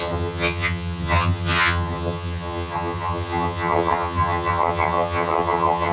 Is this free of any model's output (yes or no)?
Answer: no